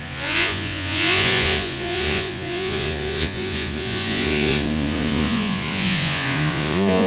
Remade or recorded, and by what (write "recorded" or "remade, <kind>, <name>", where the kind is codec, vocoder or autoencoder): remade, vocoder, Vocos